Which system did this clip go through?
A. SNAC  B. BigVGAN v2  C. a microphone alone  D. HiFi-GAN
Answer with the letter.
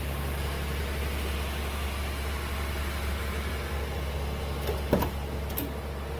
C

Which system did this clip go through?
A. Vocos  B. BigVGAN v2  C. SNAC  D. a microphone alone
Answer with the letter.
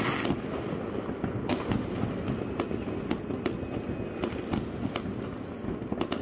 D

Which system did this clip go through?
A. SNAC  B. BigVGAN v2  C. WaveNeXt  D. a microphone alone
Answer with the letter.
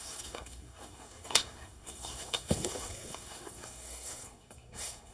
A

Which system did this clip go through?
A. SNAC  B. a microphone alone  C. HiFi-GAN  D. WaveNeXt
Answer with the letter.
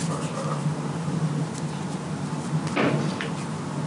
B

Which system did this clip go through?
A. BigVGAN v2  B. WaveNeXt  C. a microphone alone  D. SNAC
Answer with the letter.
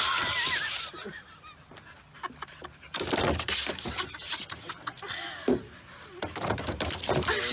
C